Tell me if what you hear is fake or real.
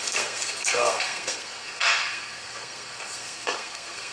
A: fake